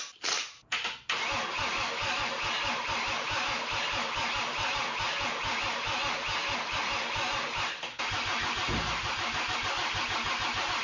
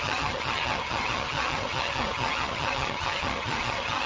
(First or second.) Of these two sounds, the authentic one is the first